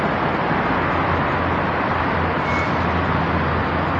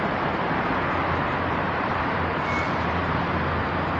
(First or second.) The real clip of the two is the first